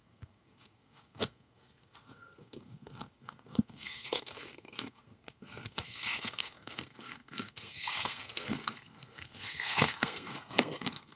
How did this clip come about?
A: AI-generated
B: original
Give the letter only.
A